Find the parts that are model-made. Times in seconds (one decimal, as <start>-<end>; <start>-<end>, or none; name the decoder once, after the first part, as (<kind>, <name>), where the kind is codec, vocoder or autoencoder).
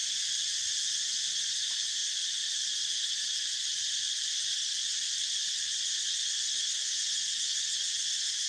0.0-0.9 (vocoder, BigVGAN v2); 4.7-5.5; 7.5-8.5